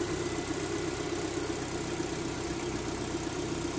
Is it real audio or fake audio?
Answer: real